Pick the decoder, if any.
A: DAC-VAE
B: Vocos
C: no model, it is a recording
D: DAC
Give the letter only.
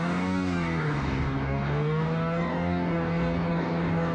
D